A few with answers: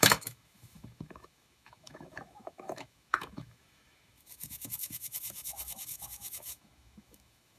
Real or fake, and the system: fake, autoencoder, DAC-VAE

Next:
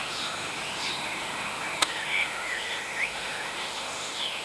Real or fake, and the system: fake, autoencoder, DAC-VAE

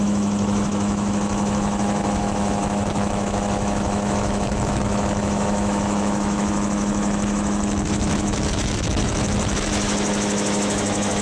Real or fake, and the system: fake, autoencoder, DAC-VAE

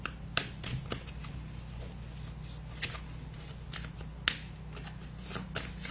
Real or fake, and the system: real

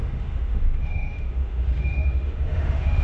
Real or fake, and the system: fake, autoencoder, DAC-VAE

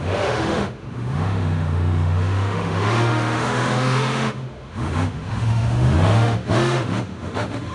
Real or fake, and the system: fake, autoencoder, DAC-VAE